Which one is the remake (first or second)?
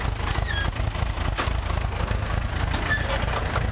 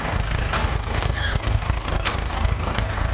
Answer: second